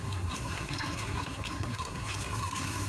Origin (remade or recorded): remade